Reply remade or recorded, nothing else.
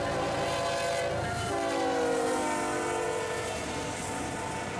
recorded